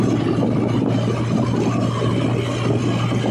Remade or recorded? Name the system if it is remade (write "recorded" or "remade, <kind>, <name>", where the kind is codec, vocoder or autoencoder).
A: recorded